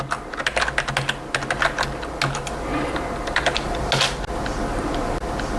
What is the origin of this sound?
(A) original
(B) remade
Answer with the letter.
A